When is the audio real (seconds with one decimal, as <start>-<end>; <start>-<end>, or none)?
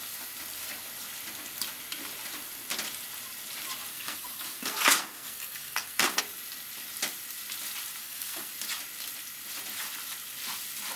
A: 0.0-3.9; 6.2-8.0; 8.5-11.0